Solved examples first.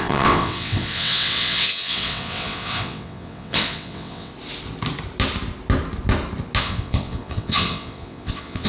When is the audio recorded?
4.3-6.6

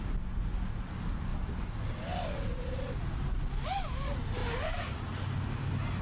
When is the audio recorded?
0.0-6.0

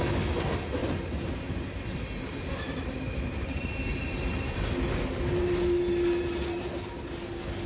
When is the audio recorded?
0.0-0.8; 4.7-7.7